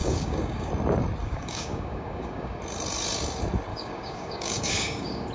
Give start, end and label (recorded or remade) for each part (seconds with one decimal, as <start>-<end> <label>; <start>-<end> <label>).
0.0-0.7 remade; 0.7-1.2 recorded; 1.2-2.6 remade; 2.6-3.7 recorded; 3.7-5.3 remade